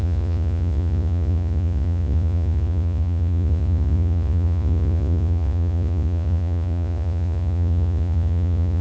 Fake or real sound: fake